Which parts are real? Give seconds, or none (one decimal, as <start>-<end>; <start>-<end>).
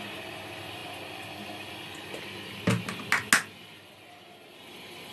0.0-5.1